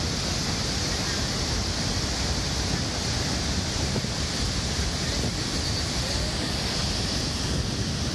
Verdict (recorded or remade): recorded